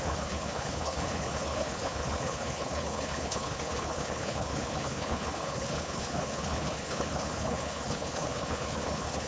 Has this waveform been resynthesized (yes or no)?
yes